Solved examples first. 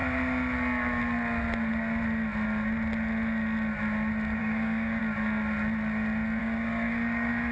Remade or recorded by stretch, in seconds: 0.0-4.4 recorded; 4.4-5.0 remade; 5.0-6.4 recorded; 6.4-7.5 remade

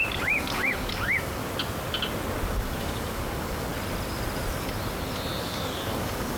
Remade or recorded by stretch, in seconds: 0.0-1.4 remade; 1.4-2.5 recorded; 2.5-3.7 remade; 3.7-5.4 recorded; 5.4-6.4 remade

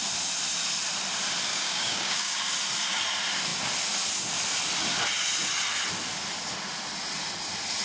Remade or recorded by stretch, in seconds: 0.0-1.5 recorded; 1.5-2.4 remade; 2.4-7.8 recorded

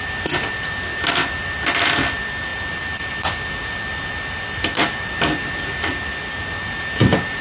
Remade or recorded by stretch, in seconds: 0.0-7.4 recorded

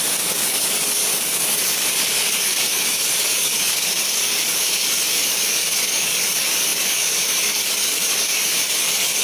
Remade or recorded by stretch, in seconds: 0.0-9.2 remade